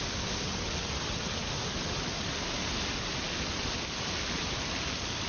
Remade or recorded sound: recorded